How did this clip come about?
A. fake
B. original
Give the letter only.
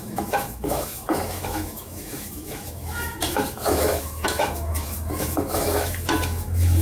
A